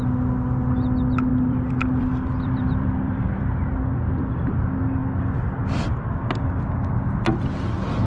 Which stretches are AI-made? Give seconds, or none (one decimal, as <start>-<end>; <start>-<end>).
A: 1.3-3.8